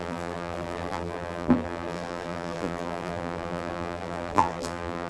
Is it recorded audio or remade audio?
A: remade